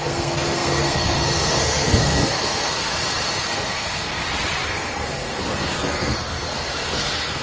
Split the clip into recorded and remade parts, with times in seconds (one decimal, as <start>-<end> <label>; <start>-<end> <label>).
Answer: 0.0-2.9 remade; 2.9-3.5 recorded; 3.5-4.2 remade; 4.2-4.7 recorded; 4.7-7.4 remade